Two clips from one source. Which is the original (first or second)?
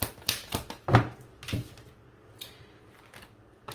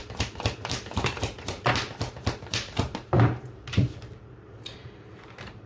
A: first